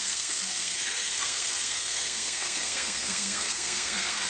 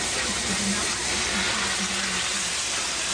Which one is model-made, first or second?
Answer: first